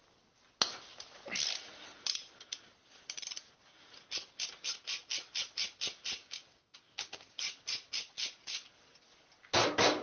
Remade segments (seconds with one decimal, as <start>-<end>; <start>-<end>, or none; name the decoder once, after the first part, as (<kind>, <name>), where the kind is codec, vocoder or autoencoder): 6.2-7.4 (codec, DAC)